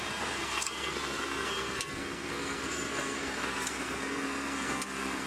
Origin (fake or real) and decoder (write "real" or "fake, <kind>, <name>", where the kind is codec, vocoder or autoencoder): fake, codec, SNAC